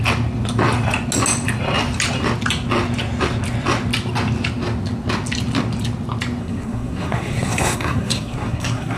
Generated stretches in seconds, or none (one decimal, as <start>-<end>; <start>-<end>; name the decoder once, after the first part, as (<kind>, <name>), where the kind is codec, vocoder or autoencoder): 6.4-9.0 (codec, SNAC)